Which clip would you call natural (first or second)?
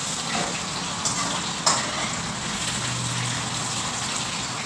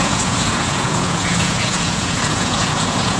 first